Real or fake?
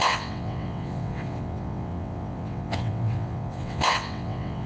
fake